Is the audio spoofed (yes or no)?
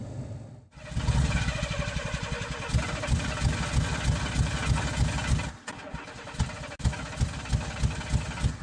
no